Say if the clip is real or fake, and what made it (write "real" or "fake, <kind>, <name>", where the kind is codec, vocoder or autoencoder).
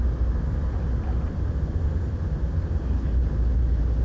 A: real